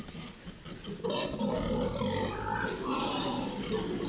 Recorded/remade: recorded